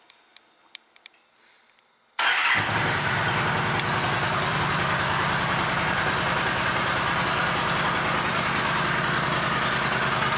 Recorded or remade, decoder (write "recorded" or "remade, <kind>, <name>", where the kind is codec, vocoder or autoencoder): remade, vocoder, BigVGAN v2